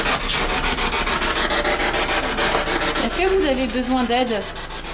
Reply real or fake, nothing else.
real